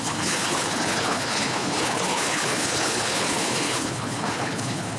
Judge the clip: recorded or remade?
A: remade